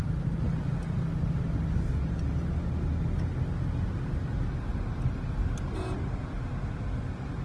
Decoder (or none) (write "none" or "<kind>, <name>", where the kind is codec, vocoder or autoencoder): none